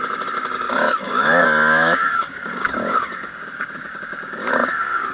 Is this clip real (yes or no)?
no